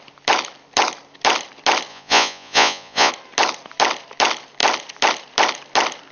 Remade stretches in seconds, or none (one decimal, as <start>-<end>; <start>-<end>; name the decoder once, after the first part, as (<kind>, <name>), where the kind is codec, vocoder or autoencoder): 1.9-3.1 (vocoder, Vocos)